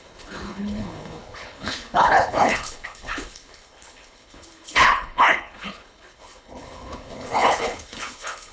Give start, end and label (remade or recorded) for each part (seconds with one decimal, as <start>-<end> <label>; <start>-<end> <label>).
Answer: 0.0-8.5 remade